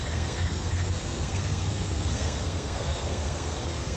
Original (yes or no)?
no